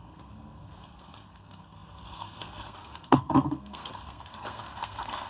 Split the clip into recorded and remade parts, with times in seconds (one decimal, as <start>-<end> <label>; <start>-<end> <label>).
0.0-5.3 remade